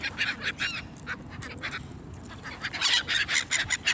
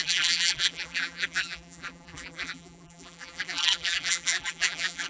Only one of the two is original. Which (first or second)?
first